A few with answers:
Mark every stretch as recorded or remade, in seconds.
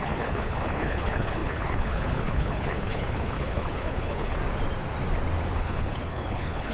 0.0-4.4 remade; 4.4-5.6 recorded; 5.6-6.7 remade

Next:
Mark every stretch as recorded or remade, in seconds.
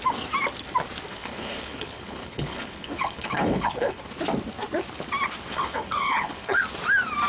0.0-1.1 recorded; 1.1-4.0 remade; 4.0-5.5 recorded; 5.5-6.6 remade; 6.6-7.3 recorded